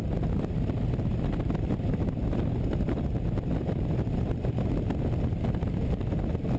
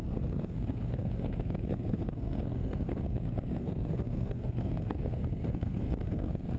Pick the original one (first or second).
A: first